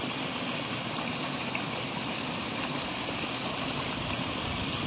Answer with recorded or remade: recorded